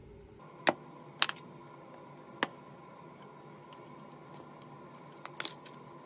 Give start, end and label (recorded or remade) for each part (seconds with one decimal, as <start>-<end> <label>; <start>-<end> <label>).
0.0-6.1 recorded